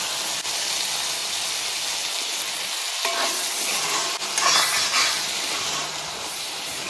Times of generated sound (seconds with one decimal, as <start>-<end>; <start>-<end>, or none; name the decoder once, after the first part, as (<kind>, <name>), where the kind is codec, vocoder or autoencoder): 5.8-6.9 (vocoder, BigVGAN v2)